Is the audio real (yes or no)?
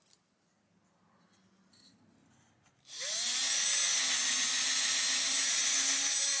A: yes